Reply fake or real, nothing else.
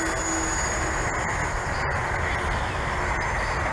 real